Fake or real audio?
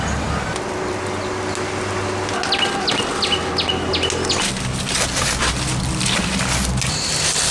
real